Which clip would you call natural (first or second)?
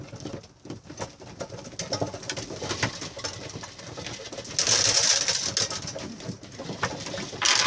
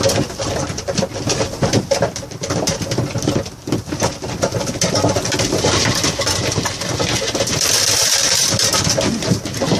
first